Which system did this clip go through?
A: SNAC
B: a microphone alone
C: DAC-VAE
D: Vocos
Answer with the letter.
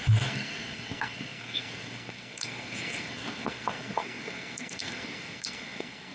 A